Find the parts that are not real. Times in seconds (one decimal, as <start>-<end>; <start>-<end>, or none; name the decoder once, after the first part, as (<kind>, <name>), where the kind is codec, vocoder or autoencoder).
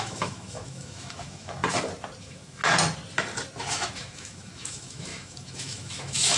0.0-1.6 (autoencoder, DAC-VAE); 2.2-2.6; 3.6-6.4